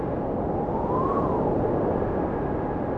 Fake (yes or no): no